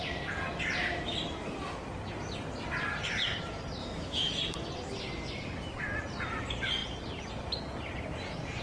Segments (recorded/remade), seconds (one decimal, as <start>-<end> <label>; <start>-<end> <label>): 0.0-3.8 recorded; 3.8-4.4 remade; 4.4-8.6 recorded